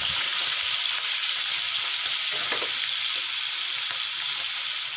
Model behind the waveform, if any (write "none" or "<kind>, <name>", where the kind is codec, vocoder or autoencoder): none